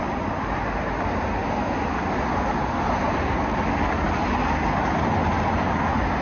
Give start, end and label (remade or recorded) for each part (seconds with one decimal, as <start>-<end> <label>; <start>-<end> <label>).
0.0-6.2 recorded